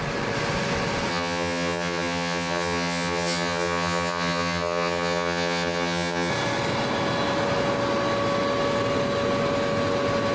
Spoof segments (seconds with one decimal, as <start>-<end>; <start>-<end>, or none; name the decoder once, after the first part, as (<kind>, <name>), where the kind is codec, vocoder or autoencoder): 1.1-6.3 (vocoder, HiFi-GAN)